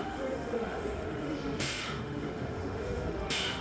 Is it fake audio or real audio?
fake